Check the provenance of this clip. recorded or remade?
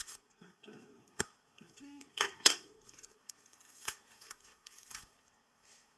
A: remade